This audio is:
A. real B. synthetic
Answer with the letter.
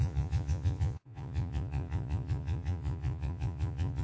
B